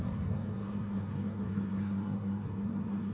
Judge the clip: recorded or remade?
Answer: remade